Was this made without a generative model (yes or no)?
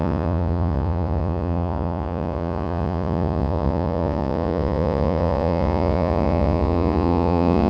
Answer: no